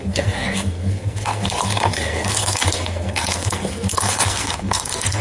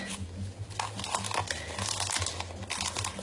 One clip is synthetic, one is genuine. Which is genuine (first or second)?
second